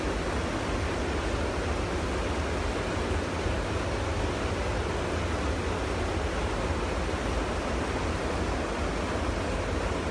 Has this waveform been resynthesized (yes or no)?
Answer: no